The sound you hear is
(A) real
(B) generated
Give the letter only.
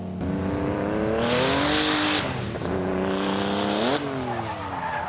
A